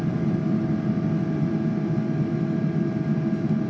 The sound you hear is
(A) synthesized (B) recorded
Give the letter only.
B